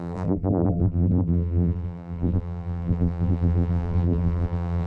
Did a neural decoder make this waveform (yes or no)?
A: yes